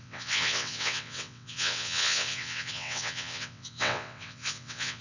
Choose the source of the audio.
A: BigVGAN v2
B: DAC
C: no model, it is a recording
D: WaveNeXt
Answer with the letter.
D